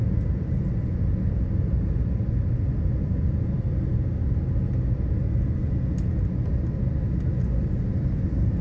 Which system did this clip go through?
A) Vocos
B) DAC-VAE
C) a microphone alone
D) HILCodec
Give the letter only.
C